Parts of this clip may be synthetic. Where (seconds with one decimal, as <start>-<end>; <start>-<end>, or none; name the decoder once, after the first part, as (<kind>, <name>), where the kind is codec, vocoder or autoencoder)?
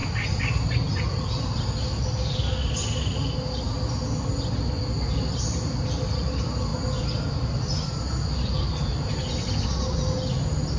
none